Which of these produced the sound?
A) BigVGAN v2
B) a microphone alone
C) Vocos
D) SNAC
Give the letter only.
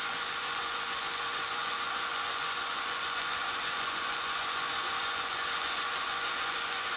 C